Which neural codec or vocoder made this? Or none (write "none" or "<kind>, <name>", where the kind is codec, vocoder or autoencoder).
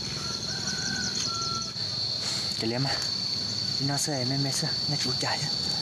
none